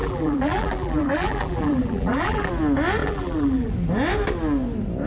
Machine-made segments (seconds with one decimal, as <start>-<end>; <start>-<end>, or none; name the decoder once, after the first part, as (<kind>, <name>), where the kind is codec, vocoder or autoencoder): 0.0-2.5 (vocoder, BigVGAN v2); 3.0-3.7

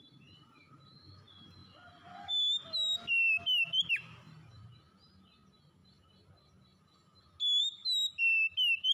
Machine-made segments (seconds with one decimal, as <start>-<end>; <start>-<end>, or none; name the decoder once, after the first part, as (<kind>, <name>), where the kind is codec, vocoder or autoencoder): none

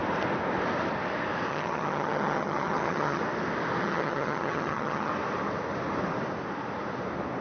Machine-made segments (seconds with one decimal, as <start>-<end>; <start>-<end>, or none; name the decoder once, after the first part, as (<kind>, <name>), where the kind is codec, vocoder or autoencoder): 1.5-3.2 (vocoder, HiFi-GAN); 3.8-5.1